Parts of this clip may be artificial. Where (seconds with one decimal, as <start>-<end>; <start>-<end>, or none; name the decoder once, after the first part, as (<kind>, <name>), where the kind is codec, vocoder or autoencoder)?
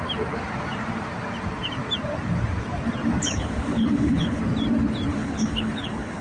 3.2-4.4 (codec, HILCodec); 5.1-6.2